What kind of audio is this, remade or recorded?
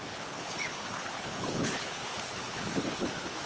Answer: remade